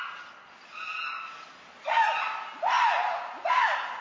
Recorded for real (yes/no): yes